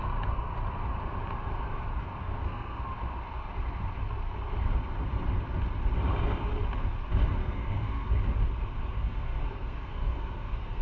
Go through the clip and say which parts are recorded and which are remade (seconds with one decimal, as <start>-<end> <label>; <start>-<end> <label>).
0.0-2.2 recorded; 2.2-2.8 remade; 2.8-7.4 recorded; 7.4-8.1 remade; 8.1-8.8 recorded; 8.8-10.8 remade